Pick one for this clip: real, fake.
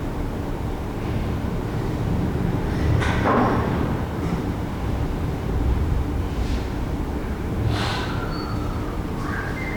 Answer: fake